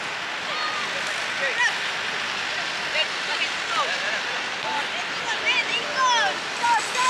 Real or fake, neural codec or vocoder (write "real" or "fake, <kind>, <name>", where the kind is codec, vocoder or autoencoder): real